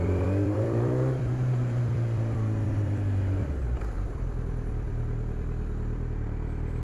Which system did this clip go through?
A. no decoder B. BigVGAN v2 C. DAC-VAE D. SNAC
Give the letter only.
B